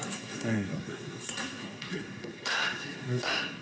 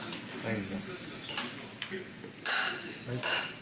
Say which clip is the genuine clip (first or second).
second